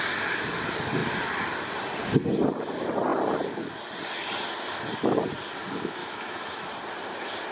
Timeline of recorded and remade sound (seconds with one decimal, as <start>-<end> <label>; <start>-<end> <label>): 0.0-6.0 recorded; 6.0-6.7 remade; 6.7-7.5 recorded